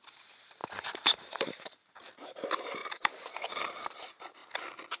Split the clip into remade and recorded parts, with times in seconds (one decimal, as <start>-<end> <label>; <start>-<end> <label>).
0.0-4.4 remade; 4.4-5.0 recorded

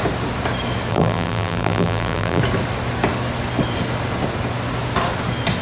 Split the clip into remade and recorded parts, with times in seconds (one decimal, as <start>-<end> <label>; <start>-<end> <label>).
0.0-0.9 recorded; 0.9-2.4 remade; 2.4-5.6 recorded

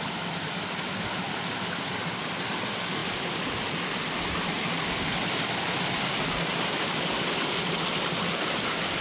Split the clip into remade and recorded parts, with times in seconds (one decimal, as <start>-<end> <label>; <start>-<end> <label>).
0.0-9.0 recorded

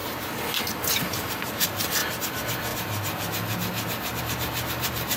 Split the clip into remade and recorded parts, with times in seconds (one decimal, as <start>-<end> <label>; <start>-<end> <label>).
0.0-0.9 recorded; 0.9-2.0 remade; 2.0-4.2 recorded; 4.2-5.2 remade

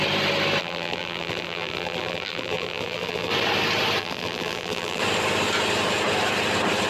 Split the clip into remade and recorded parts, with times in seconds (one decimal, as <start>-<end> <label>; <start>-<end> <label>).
0.0-0.6 recorded; 0.6-3.3 remade; 3.3-4.0 recorded; 4.0-5.0 remade; 5.0-6.9 recorded

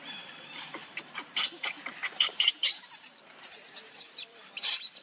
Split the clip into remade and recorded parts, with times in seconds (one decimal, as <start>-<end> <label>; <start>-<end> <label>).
0.0-5.0 remade

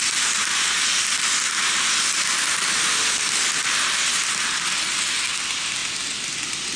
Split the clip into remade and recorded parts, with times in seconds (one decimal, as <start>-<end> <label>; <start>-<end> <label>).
0.0-6.8 recorded

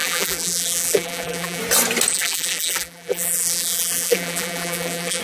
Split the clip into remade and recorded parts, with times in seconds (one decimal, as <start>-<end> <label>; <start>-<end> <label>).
0.0-1.6 remade; 1.6-2.1 recorded; 2.1-5.2 remade